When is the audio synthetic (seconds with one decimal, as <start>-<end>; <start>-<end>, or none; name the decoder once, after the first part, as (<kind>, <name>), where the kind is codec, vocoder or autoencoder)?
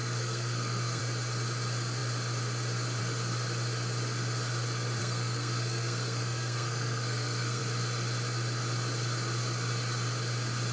0.0-1.0 (codec, SNAC); 5.0-7.6